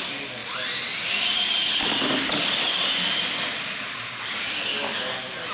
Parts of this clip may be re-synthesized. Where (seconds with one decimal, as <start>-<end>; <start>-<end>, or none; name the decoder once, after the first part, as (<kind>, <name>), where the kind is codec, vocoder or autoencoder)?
none